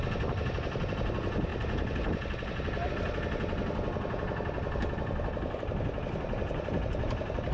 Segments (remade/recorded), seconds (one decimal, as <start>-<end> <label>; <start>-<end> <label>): 0.0-7.5 recorded